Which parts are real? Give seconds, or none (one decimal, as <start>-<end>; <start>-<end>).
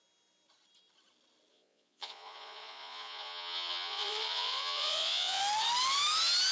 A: 0.0-1.5; 5.4-6.5